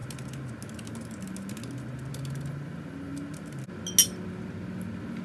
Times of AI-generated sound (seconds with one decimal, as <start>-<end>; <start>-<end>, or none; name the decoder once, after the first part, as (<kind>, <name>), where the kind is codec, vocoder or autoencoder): none

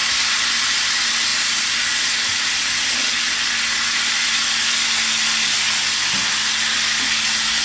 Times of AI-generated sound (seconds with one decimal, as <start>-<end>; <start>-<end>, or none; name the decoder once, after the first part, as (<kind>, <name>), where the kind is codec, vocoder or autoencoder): 0.0-0.5 (vocoder, BigVGAN v2)